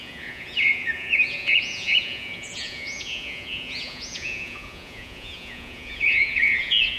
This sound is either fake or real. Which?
fake